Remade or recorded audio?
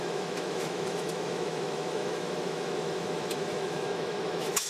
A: remade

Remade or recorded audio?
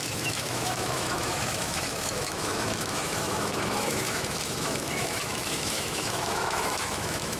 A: remade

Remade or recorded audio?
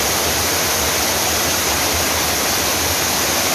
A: recorded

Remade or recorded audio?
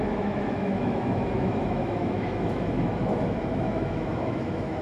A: remade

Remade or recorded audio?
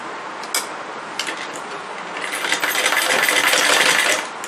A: recorded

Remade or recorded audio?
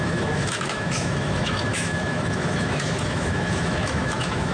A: remade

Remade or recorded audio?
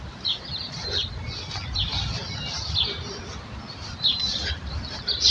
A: recorded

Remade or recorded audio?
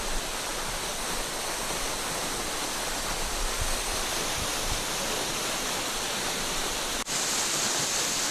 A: recorded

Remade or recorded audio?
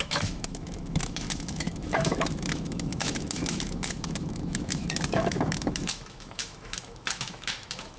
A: remade